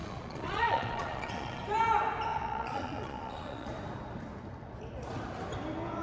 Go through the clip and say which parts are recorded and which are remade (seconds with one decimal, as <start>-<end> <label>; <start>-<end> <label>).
0.0-1.6 remade; 1.6-2.3 recorded; 2.3-3.7 remade; 3.7-6.0 recorded

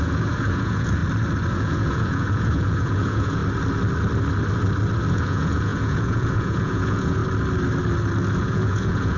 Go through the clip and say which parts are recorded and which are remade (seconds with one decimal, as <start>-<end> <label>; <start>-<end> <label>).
0.0-1.0 remade; 1.0-1.5 recorded; 1.5-3.4 remade; 3.4-5.1 recorded; 5.1-7.2 remade; 7.2-8.4 recorded; 8.4-9.2 remade

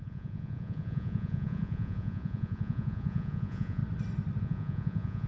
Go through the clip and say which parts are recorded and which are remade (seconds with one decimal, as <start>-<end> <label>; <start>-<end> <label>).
0.0-3.8 remade; 3.8-4.4 recorded; 4.4-5.3 remade

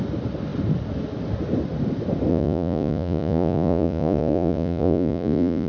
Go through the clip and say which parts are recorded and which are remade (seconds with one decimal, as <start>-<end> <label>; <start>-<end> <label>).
0.0-2.3 recorded; 2.3-5.7 remade

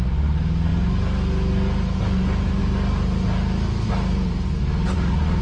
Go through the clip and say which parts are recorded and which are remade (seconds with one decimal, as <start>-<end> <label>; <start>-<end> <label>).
0.0-5.4 recorded

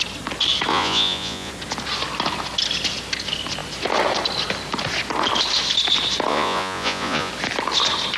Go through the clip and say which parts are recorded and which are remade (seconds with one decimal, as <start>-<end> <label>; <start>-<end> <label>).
0.0-0.7 recorded; 0.7-1.5 remade; 1.5-6.3 recorded; 6.3-7.3 remade; 7.3-8.2 recorded